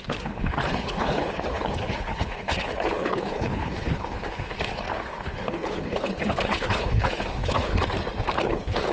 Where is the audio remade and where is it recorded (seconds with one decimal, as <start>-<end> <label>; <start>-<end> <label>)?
0.0-7.7 remade; 7.7-8.4 recorded; 8.4-8.9 remade